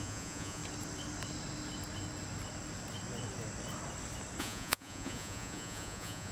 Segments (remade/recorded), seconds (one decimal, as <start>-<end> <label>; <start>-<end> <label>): 0.0-0.6 remade; 0.6-4.4 recorded; 4.4-6.3 remade